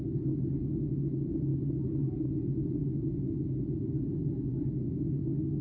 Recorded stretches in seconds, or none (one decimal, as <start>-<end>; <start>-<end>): 0.0-5.6